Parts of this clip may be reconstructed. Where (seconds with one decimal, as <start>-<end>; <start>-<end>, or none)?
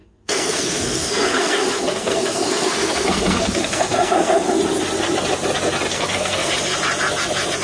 0.0-4.6; 5.9-6.5